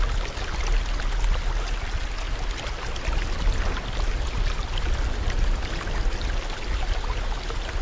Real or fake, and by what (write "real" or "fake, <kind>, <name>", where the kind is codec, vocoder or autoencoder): real